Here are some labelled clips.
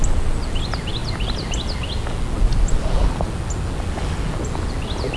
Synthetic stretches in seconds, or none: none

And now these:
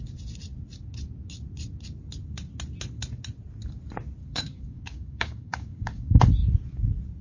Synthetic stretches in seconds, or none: 4.2-6.3 (codec, DAC)

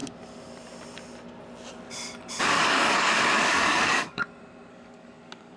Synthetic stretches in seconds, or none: 2.4-4.2 (codec, DAC); 4.7-5.6

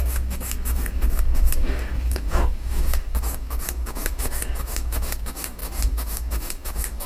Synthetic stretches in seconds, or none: 0.0-7.1 (codec, DAC)

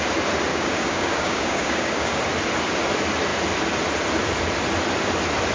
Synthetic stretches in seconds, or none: 0.5-2.2 (codec, DAC)

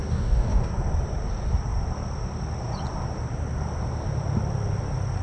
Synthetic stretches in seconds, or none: 0.0-0.7 (codec, DAC)